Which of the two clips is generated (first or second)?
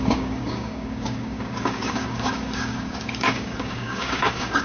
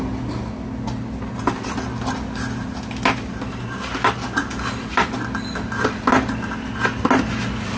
first